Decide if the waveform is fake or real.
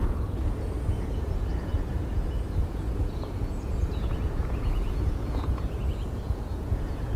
fake